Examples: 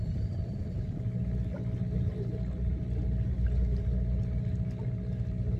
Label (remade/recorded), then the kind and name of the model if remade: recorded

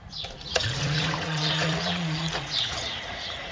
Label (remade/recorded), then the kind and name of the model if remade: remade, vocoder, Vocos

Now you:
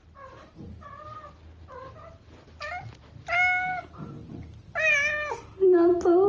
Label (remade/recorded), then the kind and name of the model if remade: recorded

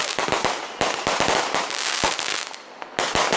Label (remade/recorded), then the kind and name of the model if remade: recorded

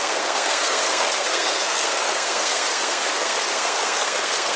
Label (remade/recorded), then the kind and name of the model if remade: remade, codec, SNAC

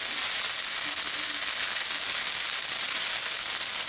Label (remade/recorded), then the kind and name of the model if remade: recorded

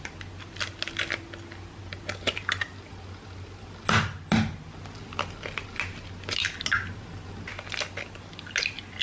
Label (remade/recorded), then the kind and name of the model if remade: recorded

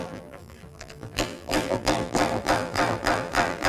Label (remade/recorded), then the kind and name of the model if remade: remade, vocoder, BigVGAN v2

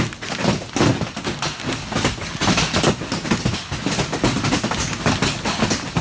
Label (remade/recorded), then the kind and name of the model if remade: recorded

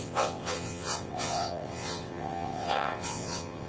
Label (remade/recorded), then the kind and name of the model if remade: remade, vocoder, WaveNeXt